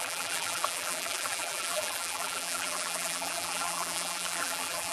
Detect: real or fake fake